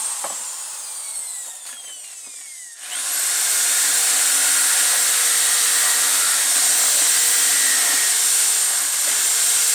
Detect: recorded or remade recorded